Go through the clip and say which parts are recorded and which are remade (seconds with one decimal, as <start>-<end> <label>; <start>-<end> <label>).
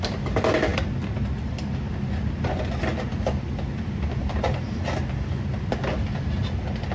0.0-6.9 recorded